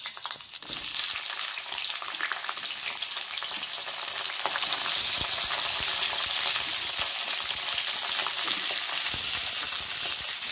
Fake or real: real